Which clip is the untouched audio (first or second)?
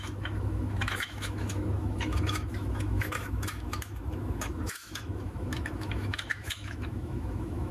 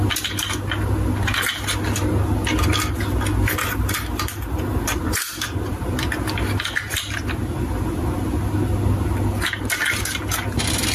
second